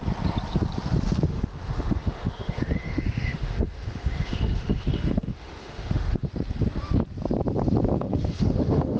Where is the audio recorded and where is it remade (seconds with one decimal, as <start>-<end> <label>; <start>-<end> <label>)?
0.0-1.3 recorded; 1.3-6.3 remade; 6.3-7.9 recorded; 7.9-9.0 remade